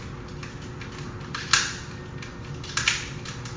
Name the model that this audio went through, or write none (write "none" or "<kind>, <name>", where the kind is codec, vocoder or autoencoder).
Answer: none